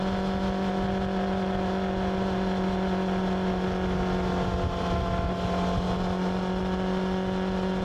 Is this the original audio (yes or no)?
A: yes